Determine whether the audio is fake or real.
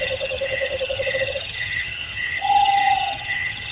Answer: fake